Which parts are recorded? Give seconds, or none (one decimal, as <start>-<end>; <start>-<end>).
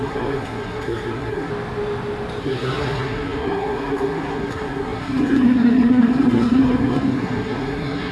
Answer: 1.5-2.4